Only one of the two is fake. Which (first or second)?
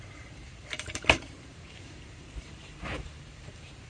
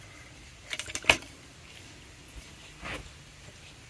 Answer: first